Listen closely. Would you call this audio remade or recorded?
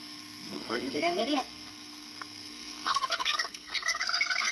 remade